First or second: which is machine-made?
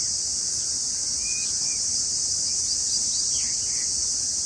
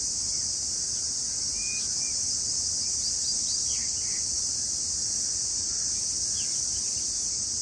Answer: first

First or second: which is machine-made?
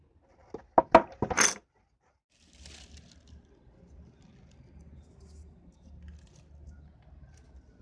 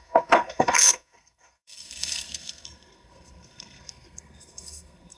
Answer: second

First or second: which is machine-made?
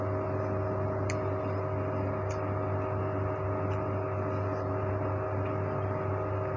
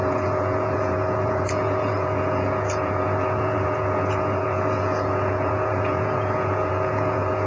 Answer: second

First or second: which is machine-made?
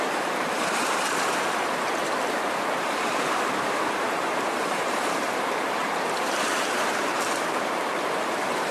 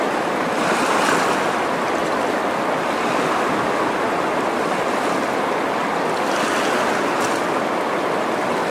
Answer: first